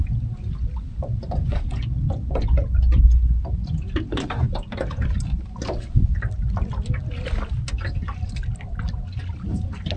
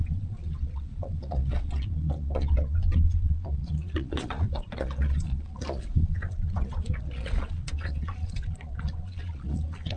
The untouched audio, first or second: first